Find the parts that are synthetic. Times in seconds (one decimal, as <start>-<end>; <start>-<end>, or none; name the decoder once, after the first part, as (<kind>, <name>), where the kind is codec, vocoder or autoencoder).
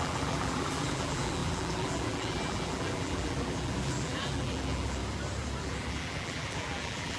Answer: 0.0-5.0 (vocoder, BigVGAN v2); 5.6-7.2